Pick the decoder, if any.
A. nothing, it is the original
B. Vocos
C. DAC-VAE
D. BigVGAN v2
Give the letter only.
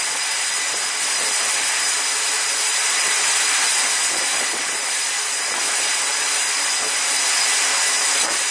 A